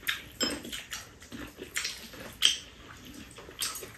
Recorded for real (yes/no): yes